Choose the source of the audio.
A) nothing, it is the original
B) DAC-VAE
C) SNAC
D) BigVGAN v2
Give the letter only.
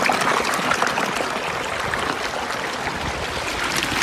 A